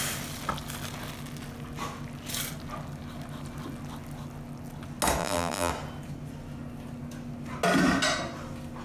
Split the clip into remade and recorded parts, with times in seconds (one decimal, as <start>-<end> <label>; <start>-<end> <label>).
0.0-5.2 recorded; 5.2-5.7 remade; 5.7-8.8 recorded